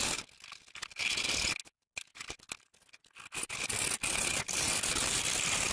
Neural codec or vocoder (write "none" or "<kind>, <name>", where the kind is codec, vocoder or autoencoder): none